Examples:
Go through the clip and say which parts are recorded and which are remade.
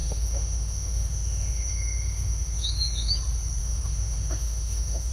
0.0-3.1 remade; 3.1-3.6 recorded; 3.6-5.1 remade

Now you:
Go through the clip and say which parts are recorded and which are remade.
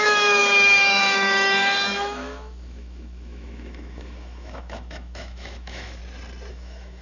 0.0-6.0 remade; 6.0-6.5 recorded; 6.5-7.0 remade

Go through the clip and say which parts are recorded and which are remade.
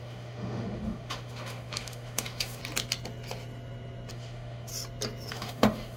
0.0-2.6 remade; 2.6-4.1 recorded; 4.1-4.7 remade; 4.7-5.3 recorded; 5.3-6.0 remade